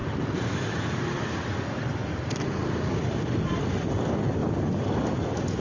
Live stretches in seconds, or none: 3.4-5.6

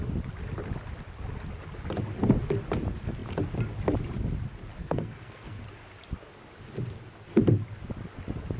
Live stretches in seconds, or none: 0.0-4.8; 5.6-8.6

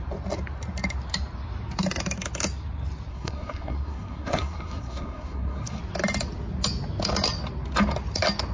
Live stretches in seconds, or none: 0.0-3.1; 5.8-8.5

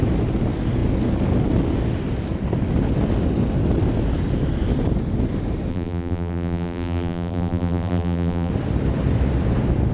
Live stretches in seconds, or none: 0.0-5.7; 8.5-9.9

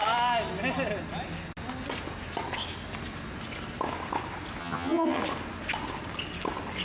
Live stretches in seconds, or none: 0.0-4.6; 5.2-6.8

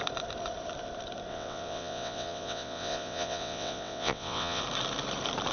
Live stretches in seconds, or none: 0.0-1.3; 4.6-5.5

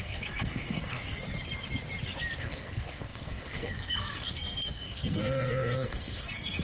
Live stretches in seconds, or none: 1.2-2.4

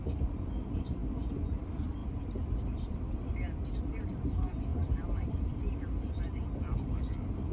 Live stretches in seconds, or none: 1.0-1.6